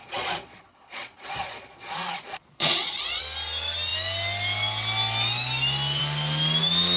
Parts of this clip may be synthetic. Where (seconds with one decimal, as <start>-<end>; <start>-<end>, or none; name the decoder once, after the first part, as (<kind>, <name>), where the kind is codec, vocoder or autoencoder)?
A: 0.0-3.2 (vocoder, Vocos)